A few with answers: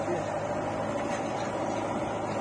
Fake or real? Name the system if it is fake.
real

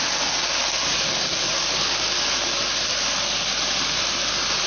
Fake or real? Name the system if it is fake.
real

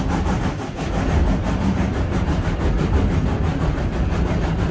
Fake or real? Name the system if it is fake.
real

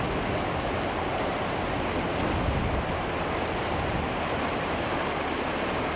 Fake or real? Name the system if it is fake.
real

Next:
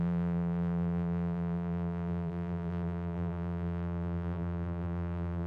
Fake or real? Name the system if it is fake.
fake, vocoder, BigVGAN v2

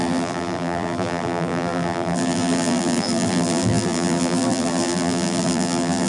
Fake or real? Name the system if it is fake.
fake, vocoder, BigVGAN v2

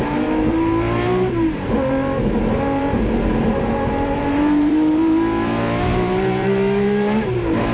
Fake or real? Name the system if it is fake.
fake, vocoder, BigVGAN v2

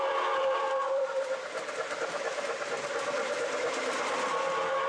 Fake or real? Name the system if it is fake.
fake, vocoder, BigVGAN v2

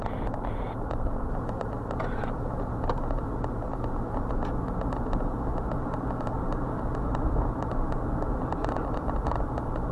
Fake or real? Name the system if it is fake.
fake, vocoder, BigVGAN v2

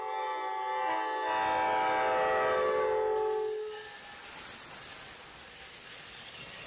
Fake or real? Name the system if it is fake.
real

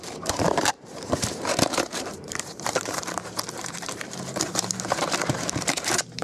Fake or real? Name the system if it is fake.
fake, vocoder, BigVGAN v2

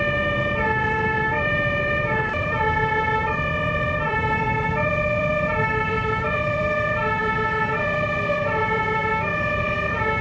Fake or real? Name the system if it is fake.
fake, vocoder, BigVGAN v2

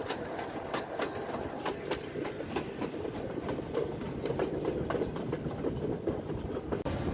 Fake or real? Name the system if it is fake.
real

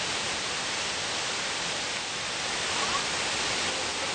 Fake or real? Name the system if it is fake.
real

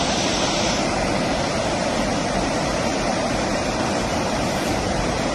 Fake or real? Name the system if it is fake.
fake, vocoder, BigVGAN v2